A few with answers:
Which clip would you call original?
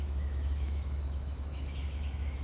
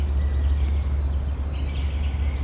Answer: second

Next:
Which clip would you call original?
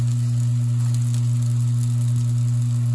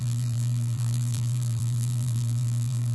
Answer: first